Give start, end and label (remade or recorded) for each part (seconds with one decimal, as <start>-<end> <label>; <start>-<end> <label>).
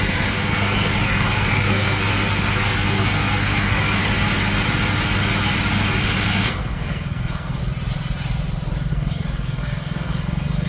0.0-4.0 remade; 4.0-6.0 recorded; 6.0-7.6 remade; 7.6-8.9 recorded; 8.9-10.7 remade